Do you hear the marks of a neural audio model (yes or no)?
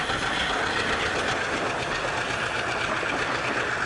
no